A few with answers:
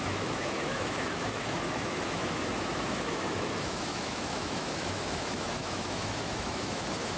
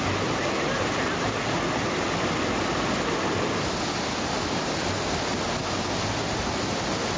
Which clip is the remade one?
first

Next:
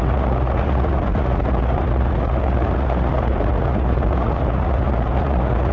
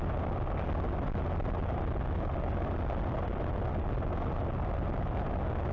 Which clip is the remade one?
first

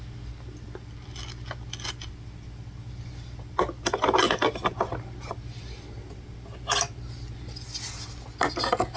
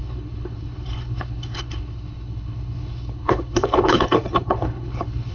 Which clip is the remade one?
second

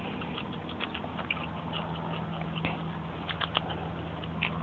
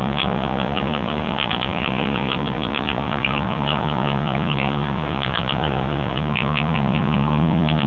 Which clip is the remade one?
second